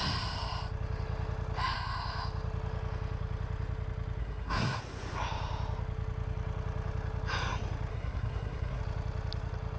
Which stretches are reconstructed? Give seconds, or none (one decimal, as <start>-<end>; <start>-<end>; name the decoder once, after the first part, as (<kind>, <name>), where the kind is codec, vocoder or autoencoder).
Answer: 4.2-4.8 (codec, SNAC); 7.9-8.8